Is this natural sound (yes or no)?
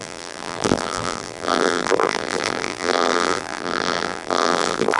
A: no